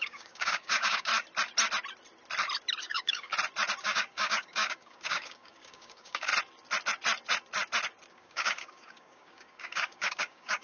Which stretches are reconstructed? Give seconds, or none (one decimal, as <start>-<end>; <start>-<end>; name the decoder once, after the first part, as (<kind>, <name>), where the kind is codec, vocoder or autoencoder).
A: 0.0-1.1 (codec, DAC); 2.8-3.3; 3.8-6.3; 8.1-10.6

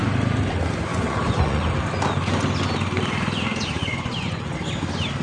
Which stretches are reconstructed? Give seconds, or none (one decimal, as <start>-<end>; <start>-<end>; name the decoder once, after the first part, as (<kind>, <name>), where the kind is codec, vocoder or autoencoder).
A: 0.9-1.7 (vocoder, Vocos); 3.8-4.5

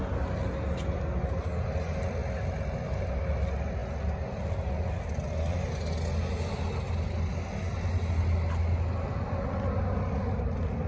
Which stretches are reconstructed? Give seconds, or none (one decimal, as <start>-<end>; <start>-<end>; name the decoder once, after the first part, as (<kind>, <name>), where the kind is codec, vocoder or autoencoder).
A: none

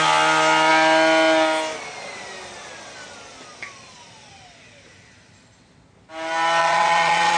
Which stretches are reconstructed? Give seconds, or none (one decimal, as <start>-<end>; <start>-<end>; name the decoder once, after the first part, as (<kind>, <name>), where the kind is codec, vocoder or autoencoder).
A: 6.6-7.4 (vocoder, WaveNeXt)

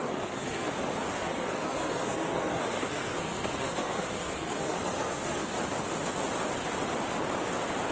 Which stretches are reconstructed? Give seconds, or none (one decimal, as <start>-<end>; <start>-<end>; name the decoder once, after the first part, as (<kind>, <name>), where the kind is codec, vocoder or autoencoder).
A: 0.0-0.7 (codec, SNAC); 1.1-5.5

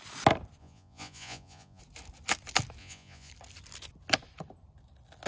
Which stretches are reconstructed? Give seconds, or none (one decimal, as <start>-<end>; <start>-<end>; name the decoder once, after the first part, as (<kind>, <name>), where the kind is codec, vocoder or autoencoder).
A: 0.6-1.8 (vocoder, Vocos); 2.8-3.3